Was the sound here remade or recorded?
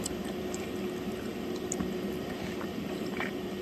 remade